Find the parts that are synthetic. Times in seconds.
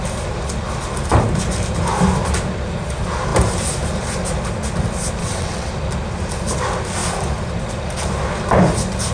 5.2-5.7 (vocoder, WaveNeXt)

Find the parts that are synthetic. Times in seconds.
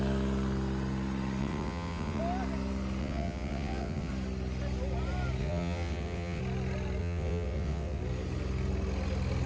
1.4-2.2 (vocoder, WaveNeXt); 3.0-4.1; 5.4-6.4; 7.0-8.0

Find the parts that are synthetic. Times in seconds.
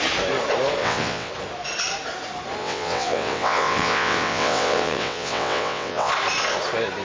0.8-1.3 (vocoder, WaveNeXt); 2.6-6.1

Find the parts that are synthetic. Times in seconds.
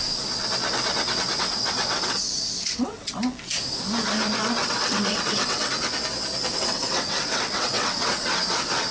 1.3-3.1 (vocoder, WaveNeXt); 4.6-5.7; 6.5-8.1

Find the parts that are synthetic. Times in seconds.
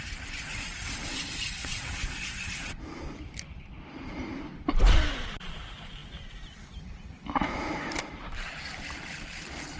1.6-2.8 (vocoder, WaveNeXt)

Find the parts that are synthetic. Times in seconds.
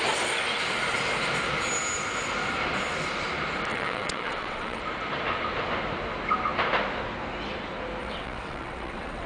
3.7-4.8 (vocoder, WaveNeXt); 8.0-9.3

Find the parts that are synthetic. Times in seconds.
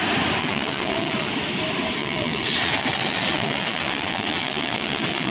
0.4-1.3 (vocoder, WaveNeXt); 2.0-5.3